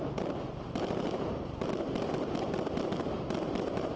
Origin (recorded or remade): recorded